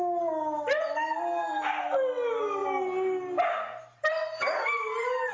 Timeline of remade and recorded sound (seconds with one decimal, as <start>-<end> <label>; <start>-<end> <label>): 0.0-1.4 recorded; 1.4-2.0 remade; 2.0-5.3 recorded